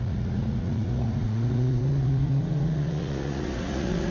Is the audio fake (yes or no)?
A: yes